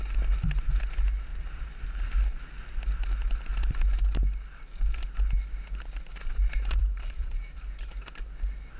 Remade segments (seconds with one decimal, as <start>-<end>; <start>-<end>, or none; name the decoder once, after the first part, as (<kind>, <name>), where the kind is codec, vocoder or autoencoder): 1.3-2.1 (vocoder, BigVGAN v2); 6.8-7.6